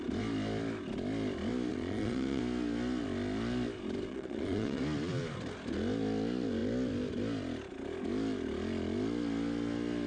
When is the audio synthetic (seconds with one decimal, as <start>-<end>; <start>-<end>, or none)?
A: 1.7-2.4; 4.1-4.8